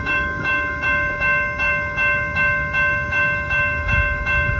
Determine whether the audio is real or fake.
fake